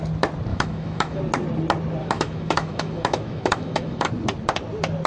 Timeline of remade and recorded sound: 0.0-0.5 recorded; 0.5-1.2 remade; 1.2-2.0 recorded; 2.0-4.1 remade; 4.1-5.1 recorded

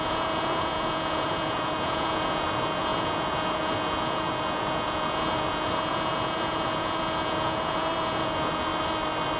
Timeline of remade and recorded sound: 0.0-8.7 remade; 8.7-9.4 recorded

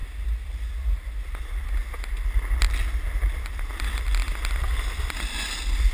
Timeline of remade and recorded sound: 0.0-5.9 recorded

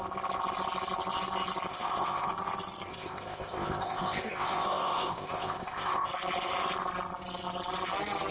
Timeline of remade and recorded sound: 0.0-1.7 recorded; 1.7-2.3 remade; 2.3-2.9 recorded; 2.9-6.1 remade; 6.1-8.3 recorded